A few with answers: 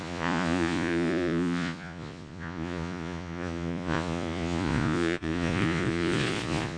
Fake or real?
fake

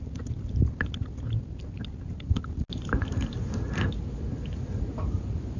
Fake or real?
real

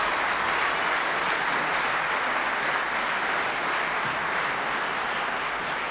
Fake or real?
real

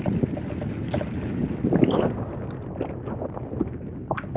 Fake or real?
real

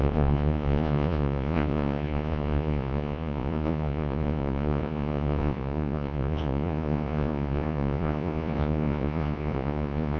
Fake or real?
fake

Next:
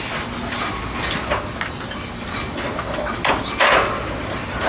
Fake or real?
real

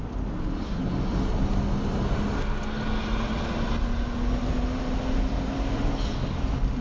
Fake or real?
real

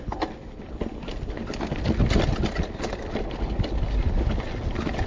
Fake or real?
real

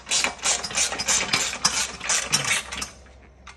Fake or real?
real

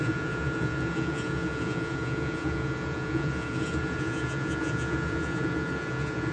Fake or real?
fake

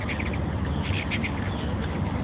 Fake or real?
real